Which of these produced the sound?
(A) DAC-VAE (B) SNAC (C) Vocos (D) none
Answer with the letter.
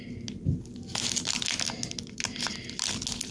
D